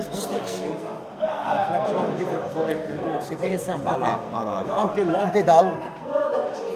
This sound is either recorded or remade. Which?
remade